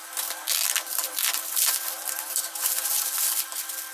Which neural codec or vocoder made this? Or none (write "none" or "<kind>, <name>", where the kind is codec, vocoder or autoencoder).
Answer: none